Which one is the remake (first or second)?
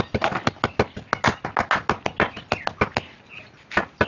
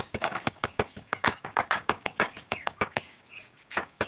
second